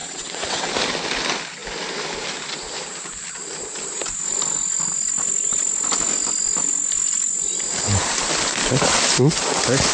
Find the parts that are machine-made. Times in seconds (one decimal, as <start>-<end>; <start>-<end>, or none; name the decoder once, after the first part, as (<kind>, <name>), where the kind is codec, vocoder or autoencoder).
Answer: 0.0-0.7 (vocoder, WaveNeXt)